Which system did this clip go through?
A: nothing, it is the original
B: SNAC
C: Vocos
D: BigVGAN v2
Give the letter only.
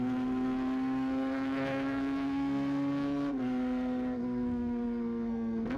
B